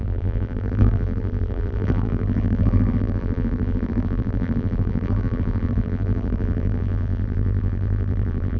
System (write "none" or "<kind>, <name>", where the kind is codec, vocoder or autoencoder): vocoder, BigVGAN v2